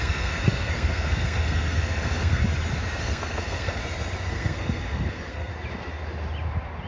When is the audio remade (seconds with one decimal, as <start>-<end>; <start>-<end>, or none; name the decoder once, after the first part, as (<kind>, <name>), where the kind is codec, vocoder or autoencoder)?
0.0-2.4 (codec, SNAC); 3.0-3.8; 4.3-5.5